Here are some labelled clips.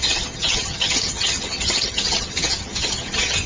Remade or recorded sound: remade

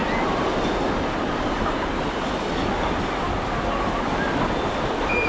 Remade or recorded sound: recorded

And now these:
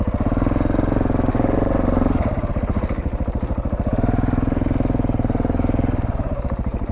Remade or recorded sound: remade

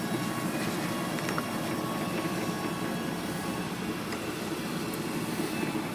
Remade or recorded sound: recorded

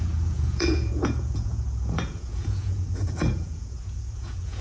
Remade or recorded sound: remade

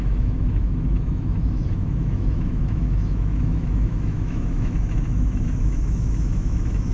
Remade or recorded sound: remade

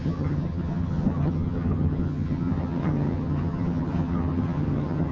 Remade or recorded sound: remade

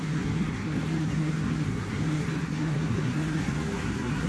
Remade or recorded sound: remade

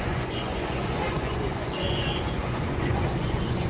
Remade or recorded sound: remade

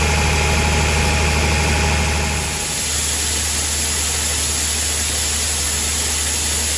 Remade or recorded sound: recorded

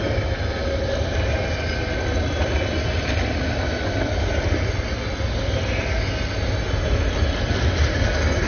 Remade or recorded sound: recorded